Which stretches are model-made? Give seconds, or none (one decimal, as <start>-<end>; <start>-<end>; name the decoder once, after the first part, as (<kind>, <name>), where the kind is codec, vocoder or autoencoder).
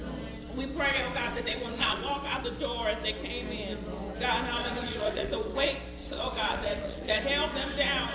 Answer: 0.9-2.4 (vocoder, WaveNeXt); 4.6-5.3; 6.0-7.2